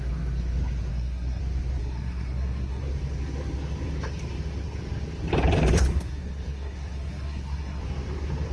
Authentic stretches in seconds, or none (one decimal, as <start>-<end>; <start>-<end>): 0.0-0.9; 1.4-1.8; 2.8-5.9; 7.8-8.5